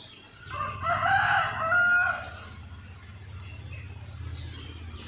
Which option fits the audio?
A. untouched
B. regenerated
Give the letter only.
A